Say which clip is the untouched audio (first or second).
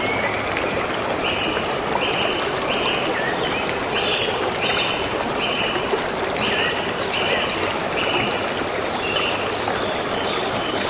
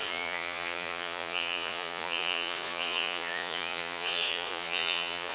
first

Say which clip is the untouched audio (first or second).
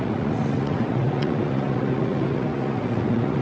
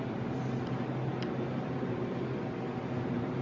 second